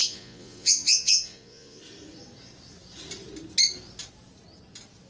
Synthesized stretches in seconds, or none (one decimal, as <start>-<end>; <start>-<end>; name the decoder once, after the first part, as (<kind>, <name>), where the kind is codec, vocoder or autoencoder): 0.0-1.8 (vocoder, Vocos)